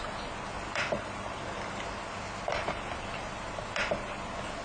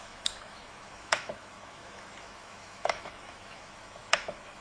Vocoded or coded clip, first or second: second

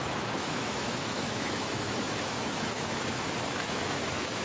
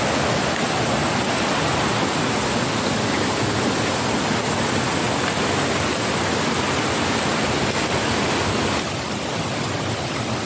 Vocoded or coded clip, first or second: first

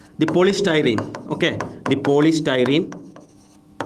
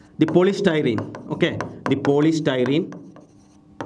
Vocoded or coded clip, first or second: first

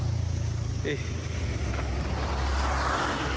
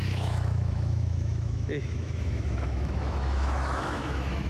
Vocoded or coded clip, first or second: second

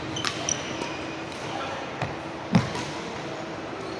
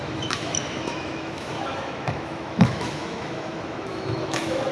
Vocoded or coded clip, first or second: second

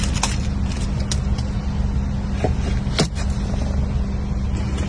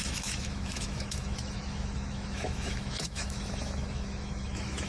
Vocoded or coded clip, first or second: second